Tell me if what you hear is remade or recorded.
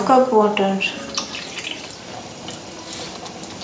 recorded